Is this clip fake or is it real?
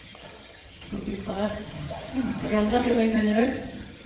fake